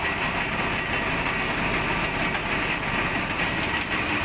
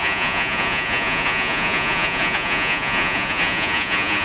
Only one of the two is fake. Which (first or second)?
second